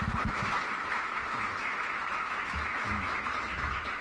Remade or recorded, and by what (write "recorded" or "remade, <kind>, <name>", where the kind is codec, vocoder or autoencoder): remade, autoencoder, DAC-VAE